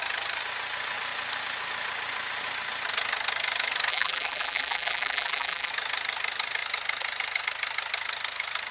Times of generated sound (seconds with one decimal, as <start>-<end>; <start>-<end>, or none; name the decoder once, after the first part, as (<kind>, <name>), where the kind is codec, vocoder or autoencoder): 3.9-5.7 (vocoder, BigVGAN v2)